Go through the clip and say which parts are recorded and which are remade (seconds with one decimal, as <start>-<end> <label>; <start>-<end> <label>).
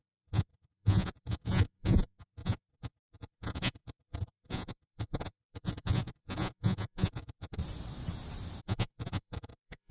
0.0-7.6 remade; 7.6-8.6 recorded; 8.6-9.9 remade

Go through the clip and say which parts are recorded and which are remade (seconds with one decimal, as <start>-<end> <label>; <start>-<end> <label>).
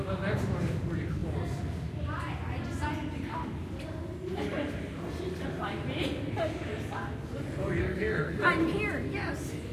0.0-7.8 recorded; 7.8-8.5 remade; 8.5-9.7 recorded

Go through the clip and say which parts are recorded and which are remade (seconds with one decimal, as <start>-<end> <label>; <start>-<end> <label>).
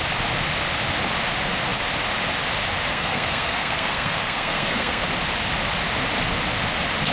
0.0-2.9 recorded; 2.9-5.1 remade; 5.1-7.1 recorded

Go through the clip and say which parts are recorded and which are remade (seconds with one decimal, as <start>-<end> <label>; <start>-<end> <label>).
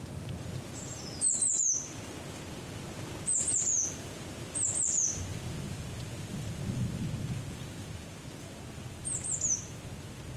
0.0-10.4 recorded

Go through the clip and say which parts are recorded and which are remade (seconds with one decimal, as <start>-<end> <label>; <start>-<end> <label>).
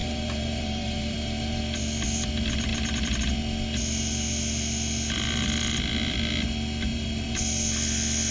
0.0-1.6 remade; 1.6-6.9 recorded; 6.9-7.4 remade; 7.4-8.3 recorded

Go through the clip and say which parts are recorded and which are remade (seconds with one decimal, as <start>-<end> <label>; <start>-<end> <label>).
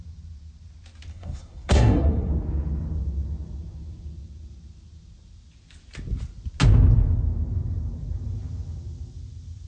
0.0-1.1 recorded; 1.1-2.3 remade; 2.3-9.7 recorded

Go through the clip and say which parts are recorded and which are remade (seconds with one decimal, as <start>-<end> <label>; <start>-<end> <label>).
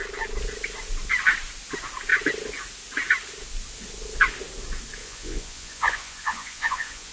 0.0-5.0 recorded; 5.0-7.1 remade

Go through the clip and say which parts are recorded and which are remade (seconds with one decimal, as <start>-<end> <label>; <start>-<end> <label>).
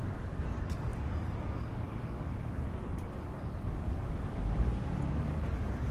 0.0-5.9 remade